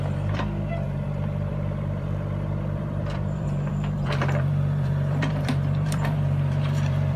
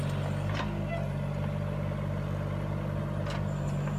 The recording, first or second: second